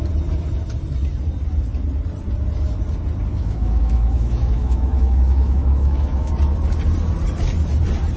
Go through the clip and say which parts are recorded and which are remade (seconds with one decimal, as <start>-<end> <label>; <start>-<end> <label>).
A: 0.0-3.3 recorded; 3.3-6.3 remade; 6.3-8.2 recorded

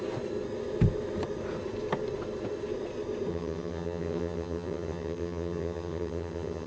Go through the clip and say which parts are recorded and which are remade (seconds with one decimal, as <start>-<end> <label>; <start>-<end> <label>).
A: 0.0-3.3 recorded; 3.3-6.7 remade